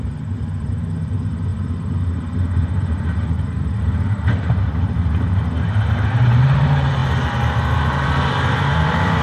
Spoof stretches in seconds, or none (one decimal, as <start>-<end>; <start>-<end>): 0.0-9.2